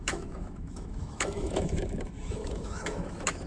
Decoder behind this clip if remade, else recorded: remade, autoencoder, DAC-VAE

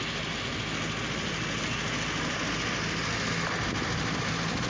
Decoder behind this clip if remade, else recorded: recorded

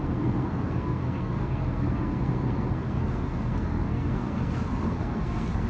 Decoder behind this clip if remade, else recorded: remade, codec, SNAC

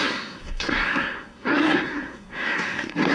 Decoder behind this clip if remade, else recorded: remade, codec, SNAC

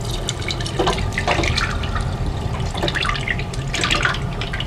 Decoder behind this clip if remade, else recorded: recorded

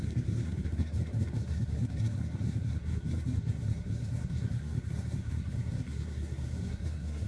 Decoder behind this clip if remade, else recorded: remade, codec, SNAC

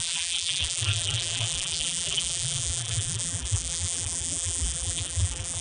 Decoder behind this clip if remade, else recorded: remade, vocoder, BigVGAN v2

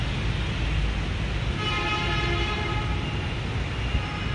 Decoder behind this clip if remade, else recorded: recorded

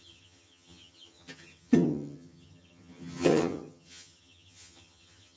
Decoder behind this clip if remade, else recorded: remade, vocoder, HiFi-GAN